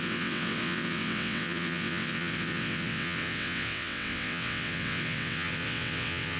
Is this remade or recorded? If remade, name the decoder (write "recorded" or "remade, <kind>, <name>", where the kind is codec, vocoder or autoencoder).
remade, vocoder, WaveNeXt